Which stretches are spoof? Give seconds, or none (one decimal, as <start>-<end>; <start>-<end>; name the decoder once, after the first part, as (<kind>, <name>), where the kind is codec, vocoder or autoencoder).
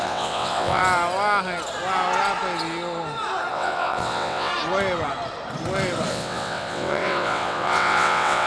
0.0-0.8 (vocoder, WaveNeXt); 3.5-4.5; 6.1-8.5